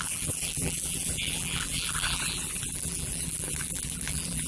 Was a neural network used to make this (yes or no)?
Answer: yes